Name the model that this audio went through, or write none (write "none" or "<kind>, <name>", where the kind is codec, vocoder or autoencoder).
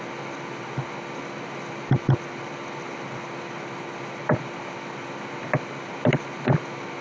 none